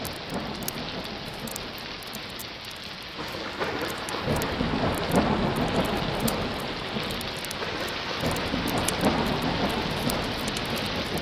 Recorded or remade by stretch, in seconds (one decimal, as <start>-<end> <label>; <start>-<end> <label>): 0.0-11.2 recorded